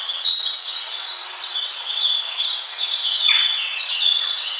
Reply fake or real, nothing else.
fake